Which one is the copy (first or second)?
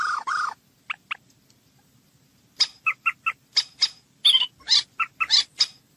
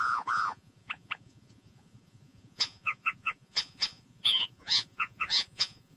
second